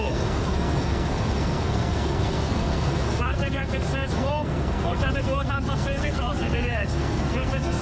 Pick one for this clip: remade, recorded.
remade